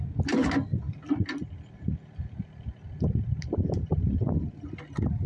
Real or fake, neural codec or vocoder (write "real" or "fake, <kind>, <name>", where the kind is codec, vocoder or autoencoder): real